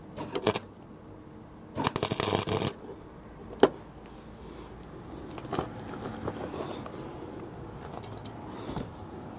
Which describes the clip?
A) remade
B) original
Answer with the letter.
B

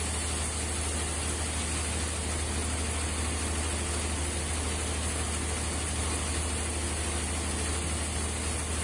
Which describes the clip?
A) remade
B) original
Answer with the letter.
B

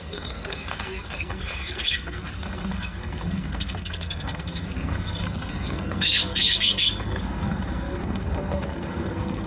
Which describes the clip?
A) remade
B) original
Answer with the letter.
A